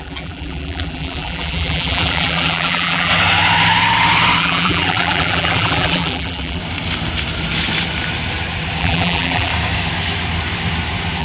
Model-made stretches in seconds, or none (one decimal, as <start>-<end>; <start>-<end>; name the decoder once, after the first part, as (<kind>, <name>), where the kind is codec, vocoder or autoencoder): 0.0-3.1 (vocoder, BigVGAN v2); 4.4-6.6; 8.8-9.5